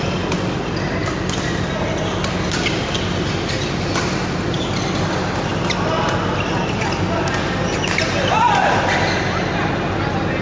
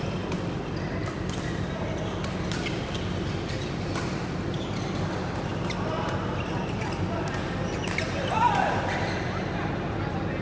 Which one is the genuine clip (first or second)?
first